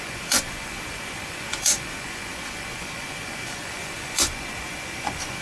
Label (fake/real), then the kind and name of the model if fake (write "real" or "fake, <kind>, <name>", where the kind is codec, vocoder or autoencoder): fake, vocoder, Vocos